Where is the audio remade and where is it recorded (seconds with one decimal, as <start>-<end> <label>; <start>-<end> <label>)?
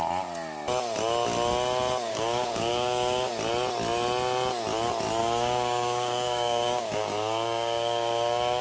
0.0-2.1 recorded; 2.1-3.3 remade; 3.3-5.2 recorded; 5.2-8.6 remade